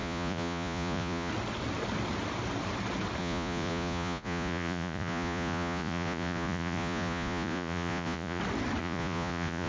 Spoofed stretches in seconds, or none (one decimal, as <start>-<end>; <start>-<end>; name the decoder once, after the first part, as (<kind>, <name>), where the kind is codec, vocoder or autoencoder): 0.0-1.3 (vocoder, Vocos); 3.2-8.4; 8.8-9.7